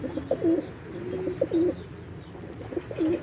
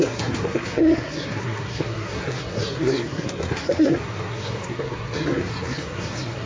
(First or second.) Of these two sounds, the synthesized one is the second